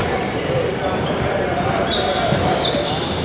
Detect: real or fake real